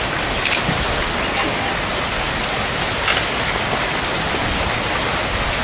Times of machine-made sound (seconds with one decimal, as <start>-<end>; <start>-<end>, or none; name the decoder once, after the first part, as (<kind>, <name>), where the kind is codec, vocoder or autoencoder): none